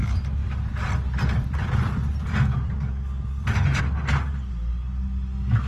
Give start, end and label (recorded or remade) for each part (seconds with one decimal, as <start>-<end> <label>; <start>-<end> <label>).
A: 0.0-0.4 recorded; 0.4-3.8 remade; 3.8-5.7 recorded